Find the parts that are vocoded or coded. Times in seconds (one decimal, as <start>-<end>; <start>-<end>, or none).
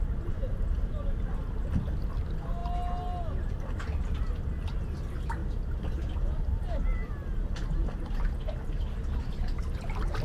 none